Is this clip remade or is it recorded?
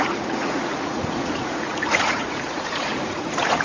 remade